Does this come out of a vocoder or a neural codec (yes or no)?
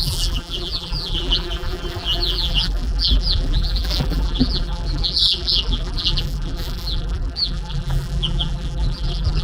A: yes